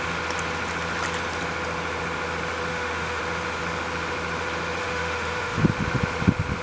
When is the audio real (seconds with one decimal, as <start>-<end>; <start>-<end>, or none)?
0.0-2.7; 3.2-4.8; 5.6-6.6

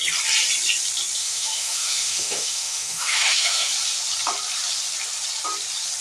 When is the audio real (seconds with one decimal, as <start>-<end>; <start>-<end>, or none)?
0.0-1.2; 3.7-6.0

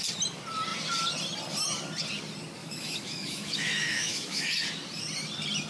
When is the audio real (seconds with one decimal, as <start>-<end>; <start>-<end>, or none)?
0.0-2.6; 4.5-5.7

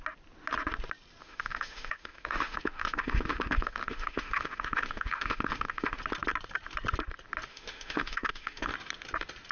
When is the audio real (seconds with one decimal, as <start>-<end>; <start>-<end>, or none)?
0.0-1.2; 6.0-7.5; 8.7-9.5

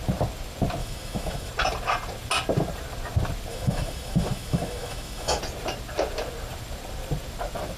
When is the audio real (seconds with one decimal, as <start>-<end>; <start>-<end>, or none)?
0.0-0.8; 1.5-3.5; 5.4-7.8

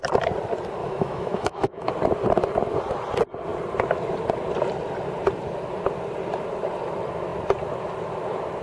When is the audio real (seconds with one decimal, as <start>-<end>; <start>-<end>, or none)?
0.0-0.8; 1.9-8.6

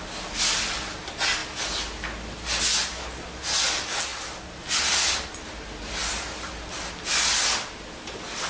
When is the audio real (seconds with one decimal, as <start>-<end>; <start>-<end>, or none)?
0.0-8.5